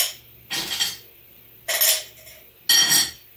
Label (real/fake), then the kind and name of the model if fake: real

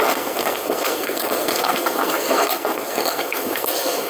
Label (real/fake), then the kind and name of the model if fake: fake, codec, SNAC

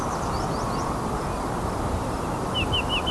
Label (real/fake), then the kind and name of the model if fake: real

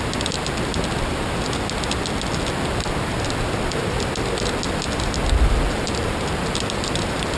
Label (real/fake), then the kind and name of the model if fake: real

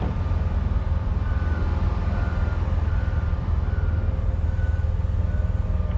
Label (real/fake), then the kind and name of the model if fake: real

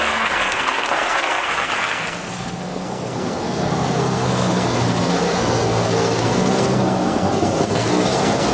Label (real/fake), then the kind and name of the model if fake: fake, codec, SNAC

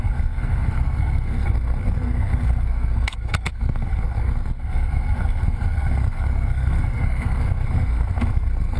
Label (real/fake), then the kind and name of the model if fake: fake, codec, SNAC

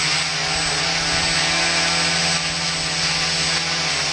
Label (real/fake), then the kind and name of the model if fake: real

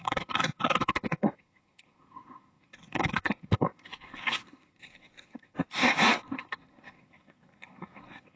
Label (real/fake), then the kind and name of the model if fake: fake, codec, SNAC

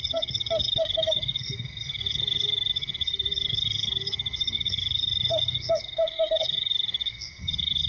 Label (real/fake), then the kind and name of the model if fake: fake, codec, SNAC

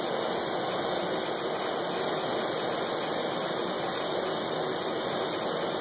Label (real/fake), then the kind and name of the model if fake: real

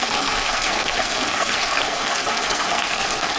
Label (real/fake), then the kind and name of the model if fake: fake, codec, SNAC